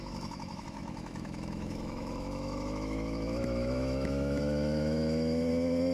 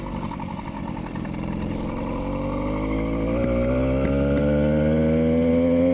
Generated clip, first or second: first